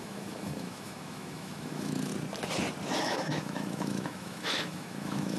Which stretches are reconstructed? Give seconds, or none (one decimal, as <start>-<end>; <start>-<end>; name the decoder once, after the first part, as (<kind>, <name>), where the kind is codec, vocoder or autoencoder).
0.0-2.1 (autoencoder, DAC-VAE); 3.0-5.4